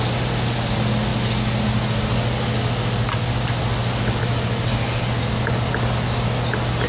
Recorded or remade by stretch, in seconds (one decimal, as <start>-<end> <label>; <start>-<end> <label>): 0.0-6.9 recorded